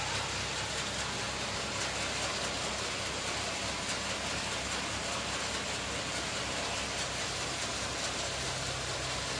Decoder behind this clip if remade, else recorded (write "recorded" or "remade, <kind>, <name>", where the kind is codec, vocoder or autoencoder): recorded